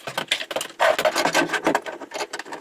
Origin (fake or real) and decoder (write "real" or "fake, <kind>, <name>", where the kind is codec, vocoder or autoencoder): real